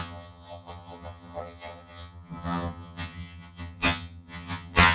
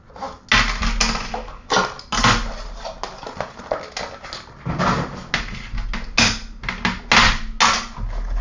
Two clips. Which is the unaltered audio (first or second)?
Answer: second